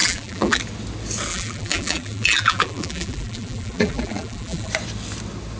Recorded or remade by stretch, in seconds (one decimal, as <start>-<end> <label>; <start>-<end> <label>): 0.0-0.6 remade; 0.6-1.3 recorded; 1.3-4.7 remade; 4.7-5.6 recorded